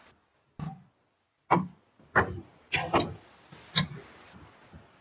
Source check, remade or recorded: recorded